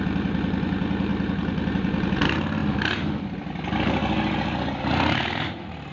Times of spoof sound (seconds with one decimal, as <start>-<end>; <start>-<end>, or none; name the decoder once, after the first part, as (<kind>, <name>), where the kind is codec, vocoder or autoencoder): 0.0-1.1 (vocoder, BigVGAN v2); 1.7-2.6; 3.2-4.0; 4.8-5.9